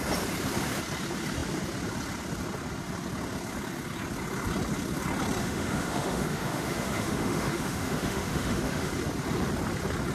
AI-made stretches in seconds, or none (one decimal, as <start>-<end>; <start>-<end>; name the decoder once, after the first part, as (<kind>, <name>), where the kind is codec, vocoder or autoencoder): 5.4-8.9 (autoencoder, DAC-VAE)